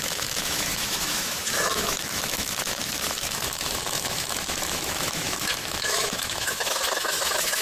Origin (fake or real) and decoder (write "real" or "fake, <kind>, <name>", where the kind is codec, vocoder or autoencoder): fake, autoencoder, DAC-VAE